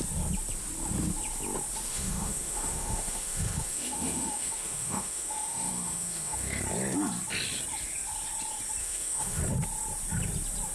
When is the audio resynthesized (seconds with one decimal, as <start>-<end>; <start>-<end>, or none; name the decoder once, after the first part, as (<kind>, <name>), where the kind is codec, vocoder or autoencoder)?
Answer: 1.9-6.6 (autoencoder, DAC-VAE); 8.8-9.4